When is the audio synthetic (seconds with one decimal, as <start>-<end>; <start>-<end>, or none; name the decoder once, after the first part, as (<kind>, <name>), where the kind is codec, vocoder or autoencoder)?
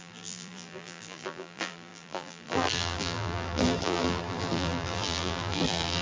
0.0-6.0 (vocoder, BigVGAN v2)